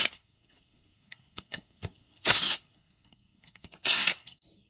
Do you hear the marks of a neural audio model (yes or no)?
yes